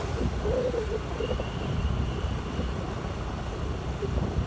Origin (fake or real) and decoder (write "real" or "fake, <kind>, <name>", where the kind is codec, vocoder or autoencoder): real